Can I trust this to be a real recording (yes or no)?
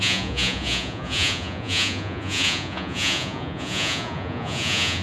no